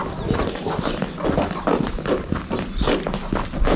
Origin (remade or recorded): recorded